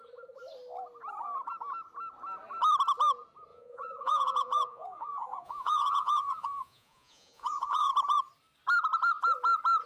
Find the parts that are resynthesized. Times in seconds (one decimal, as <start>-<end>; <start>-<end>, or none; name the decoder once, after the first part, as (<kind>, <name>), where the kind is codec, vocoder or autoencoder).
3.5-7.9 (vocoder, Vocos)